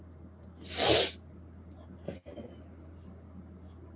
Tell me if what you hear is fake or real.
real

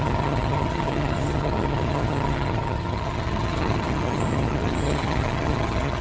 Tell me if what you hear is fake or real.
fake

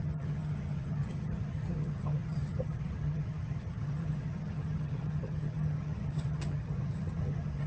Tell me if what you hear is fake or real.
fake